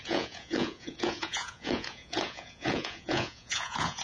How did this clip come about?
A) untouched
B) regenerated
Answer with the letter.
B